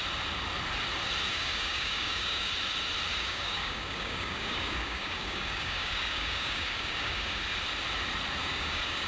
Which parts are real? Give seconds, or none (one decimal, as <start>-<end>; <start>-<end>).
0.0-1.3; 2.5-3.1; 7.4-8.4